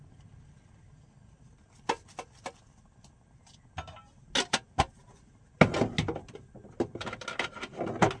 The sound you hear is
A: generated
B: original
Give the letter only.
B